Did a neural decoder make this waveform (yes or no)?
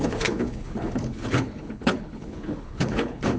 yes